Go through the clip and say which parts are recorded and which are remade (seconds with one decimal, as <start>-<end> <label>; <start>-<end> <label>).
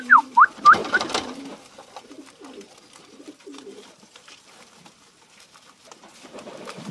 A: 0.0-0.8 remade; 0.8-3.2 recorded; 3.2-6.9 remade